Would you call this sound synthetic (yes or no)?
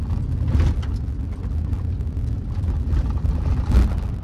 no